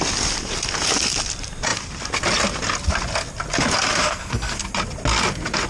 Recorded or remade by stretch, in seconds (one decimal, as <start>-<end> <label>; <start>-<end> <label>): 0.0-4.0 recorded; 4.0-4.7 remade; 4.7-5.7 recorded